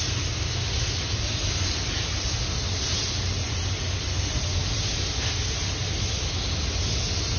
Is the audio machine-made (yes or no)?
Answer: no